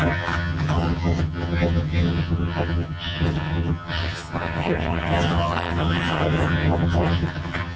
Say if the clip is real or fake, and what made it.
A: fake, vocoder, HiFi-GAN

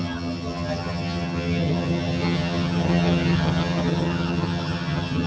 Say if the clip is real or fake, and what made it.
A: fake, vocoder, HiFi-GAN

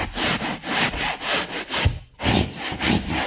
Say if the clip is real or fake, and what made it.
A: real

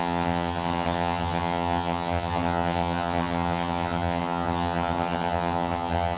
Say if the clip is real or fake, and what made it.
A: fake, vocoder, HiFi-GAN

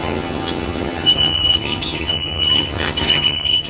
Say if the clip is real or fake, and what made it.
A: fake, vocoder, HiFi-GAN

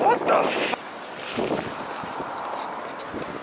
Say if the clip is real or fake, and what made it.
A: real